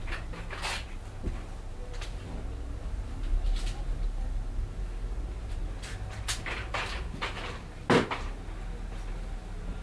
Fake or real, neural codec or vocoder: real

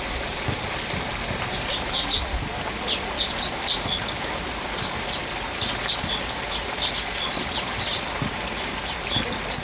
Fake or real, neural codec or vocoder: real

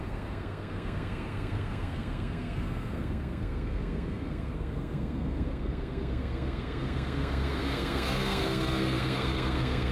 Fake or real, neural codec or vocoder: fake, codec, SNAC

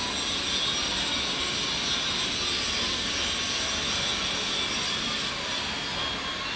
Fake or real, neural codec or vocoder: real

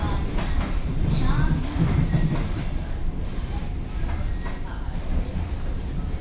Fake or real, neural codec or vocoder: real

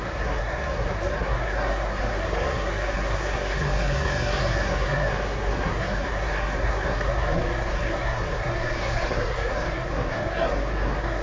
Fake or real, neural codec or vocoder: fake, codec, SNAC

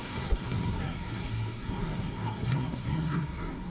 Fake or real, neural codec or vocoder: fake, codec, SNAC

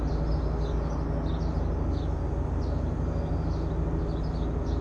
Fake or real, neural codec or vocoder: real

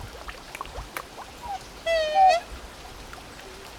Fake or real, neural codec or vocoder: real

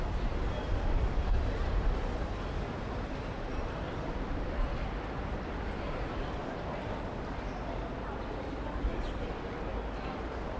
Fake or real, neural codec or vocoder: real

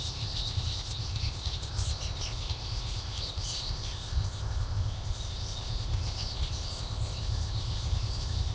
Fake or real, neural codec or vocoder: fake, codec, ZipCodec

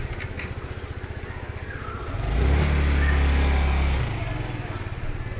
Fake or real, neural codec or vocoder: real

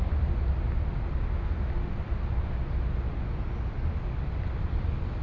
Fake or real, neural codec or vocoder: real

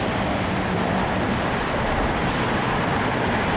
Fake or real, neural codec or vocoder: real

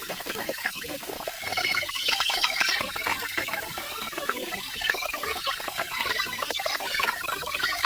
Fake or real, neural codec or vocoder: fake, codec, SNAC